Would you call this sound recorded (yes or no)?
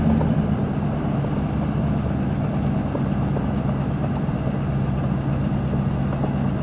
yes